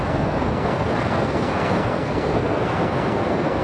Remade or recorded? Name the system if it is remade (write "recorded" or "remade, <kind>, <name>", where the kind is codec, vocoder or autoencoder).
remade, codec, SNAC